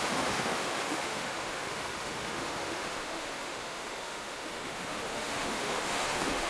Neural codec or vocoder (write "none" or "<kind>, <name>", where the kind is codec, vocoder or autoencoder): autoencoder, DAC-VAE